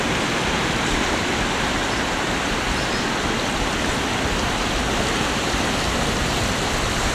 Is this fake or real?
real